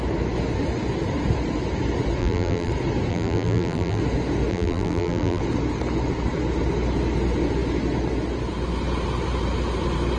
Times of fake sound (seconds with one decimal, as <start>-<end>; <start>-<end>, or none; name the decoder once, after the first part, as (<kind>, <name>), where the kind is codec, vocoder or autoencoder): 2.2-2.7 (vocoder, BigVGAN v2); 3.1-4.0; 4.5-5.4